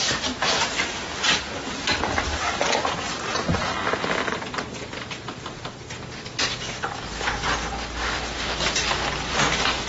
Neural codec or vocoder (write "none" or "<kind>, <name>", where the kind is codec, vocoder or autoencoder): none